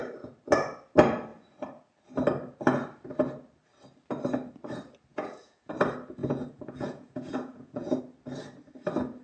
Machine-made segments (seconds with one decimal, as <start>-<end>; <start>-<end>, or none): 5.1-5.7; 6.2-8.0